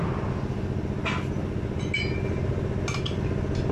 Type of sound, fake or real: real